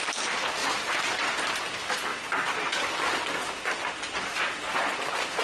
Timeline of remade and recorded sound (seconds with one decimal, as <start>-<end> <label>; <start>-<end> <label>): 0.0-0.6 recorded; 0.6-1.2 remade; 1.2-5.4 recorded

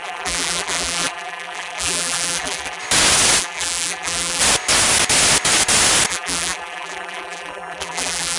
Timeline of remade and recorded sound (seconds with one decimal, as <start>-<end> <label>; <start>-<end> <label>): 0.0-2.8 remade; 2.8-3.4 recorded; 3.4-4.4 remade; 4.4-6.1 recorded; 6.1-8.4 remade

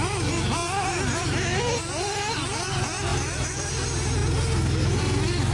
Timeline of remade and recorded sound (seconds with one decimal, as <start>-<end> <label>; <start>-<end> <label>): 0.0-3.1 recorded; 3.1-3.7 remade; 3.7-5.5 recorded

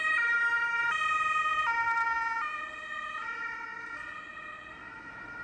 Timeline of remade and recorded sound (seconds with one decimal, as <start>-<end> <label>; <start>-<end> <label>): 0.0-5.4 recorded

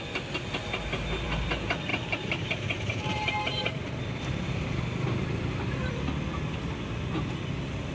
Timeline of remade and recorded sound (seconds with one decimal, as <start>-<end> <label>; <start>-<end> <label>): 0.0-1.9 recorded; 1.9-4.8 remade; 4.8-7.9 recorded